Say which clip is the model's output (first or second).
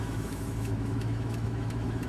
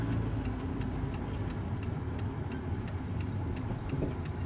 first